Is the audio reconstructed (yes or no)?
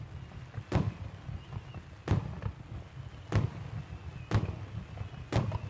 no